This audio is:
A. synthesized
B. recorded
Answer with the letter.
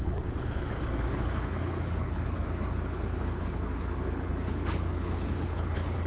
A